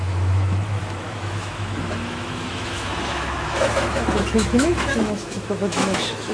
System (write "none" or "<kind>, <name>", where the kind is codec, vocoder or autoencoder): autoencoder, DAC-VAE